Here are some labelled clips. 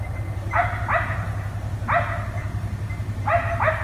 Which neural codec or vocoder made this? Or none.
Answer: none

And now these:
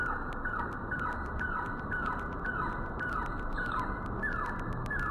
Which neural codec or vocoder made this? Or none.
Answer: none